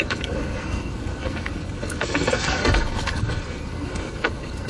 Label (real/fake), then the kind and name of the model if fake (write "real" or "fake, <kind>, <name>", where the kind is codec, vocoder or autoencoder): fake, codec, SNAC